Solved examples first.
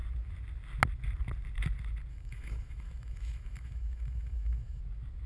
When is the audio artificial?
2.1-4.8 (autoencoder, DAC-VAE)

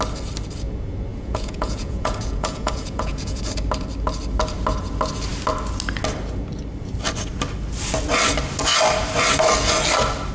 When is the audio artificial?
1.1-3.4 (vocoder, Vocos)

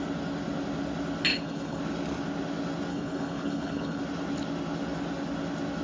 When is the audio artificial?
1.3-1.8 (codec, HILCodec); 2.9-4.0

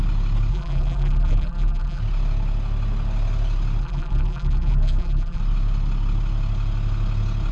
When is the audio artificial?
0.5-2.0 (vocoder, BigVGAN v2); 3.8-5.4